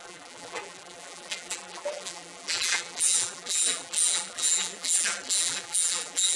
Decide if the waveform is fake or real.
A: fake